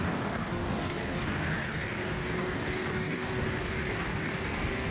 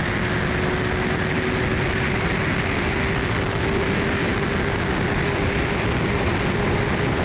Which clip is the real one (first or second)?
second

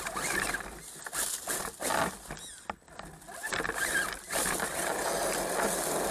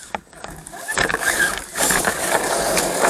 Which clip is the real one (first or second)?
first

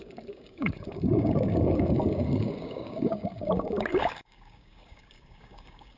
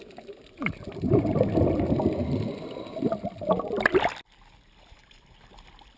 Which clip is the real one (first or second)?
second